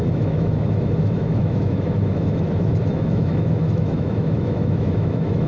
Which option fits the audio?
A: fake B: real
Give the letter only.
A